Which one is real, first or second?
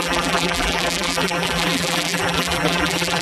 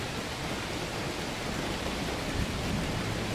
second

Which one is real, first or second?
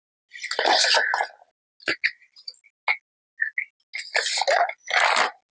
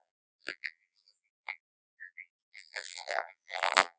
first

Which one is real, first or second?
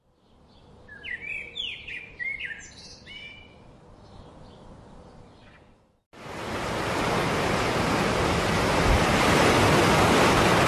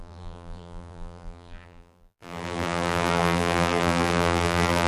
first